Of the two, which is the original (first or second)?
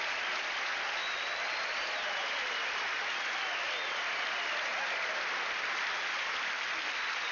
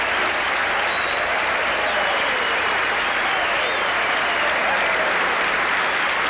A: second